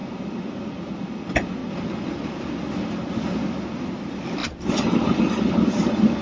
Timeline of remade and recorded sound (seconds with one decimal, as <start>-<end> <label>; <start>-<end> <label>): 0.0-6.2 recorded